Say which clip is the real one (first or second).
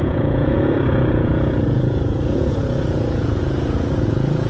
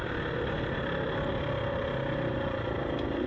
second